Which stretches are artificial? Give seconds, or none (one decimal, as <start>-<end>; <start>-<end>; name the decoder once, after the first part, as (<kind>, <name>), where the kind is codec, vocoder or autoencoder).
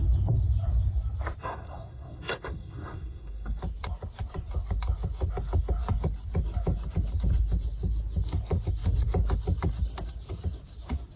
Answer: 1.4-3.6 (codec, SNAC)